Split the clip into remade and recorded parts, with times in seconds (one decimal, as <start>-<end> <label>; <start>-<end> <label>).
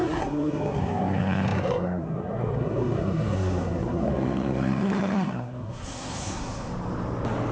0.0-6.7 remade; 6.7-7.5 recorded